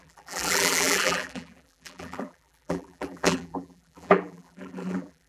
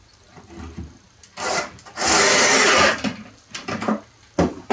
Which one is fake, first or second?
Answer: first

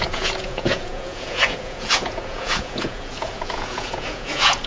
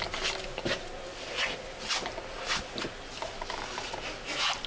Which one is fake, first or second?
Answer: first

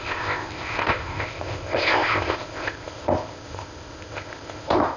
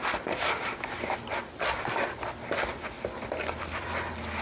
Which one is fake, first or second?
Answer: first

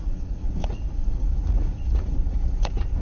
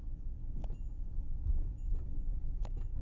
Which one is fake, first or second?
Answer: first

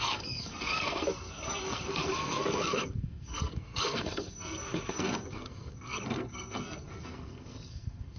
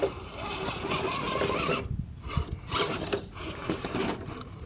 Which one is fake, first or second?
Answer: first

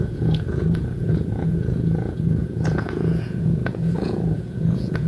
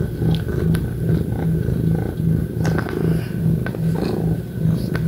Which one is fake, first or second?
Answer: first